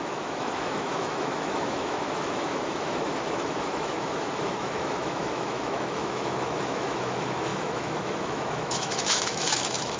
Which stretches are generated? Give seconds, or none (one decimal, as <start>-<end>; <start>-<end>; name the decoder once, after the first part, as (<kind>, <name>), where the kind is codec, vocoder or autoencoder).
0.0-10.0 (autoencoder, DAC-VAE)